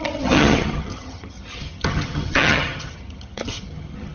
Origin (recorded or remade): remade